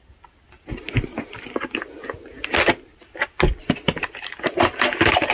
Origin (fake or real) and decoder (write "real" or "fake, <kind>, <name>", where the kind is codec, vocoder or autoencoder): real